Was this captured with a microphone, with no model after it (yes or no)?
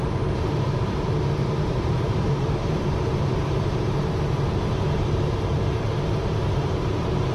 no